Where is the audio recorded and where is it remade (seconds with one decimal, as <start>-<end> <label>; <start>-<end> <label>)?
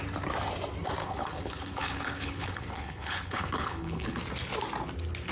0.0-1.0 recorded; 1.0-4.2 remade; 4.2-5.3 recorded